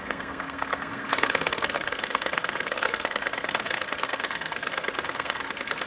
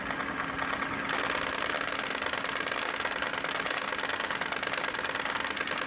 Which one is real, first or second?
second